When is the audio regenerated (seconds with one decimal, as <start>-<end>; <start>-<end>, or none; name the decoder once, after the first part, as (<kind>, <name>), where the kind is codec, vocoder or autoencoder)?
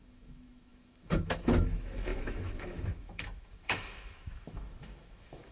0.0-5.5 (autoencoder, DAC-VAE)